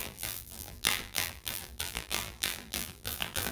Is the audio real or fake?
fake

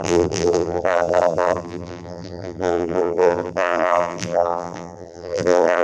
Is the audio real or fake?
fake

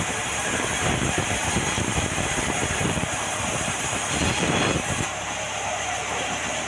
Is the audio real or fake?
fake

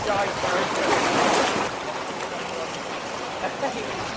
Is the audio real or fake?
real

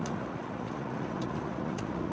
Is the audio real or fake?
fake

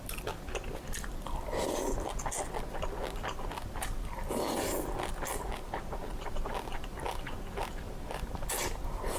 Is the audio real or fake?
real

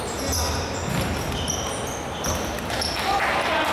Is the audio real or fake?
real